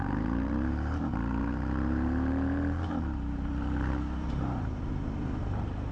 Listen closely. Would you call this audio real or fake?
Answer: fake